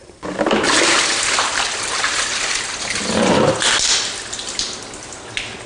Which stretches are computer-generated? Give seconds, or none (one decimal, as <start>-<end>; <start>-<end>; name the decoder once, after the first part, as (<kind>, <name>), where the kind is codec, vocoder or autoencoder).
none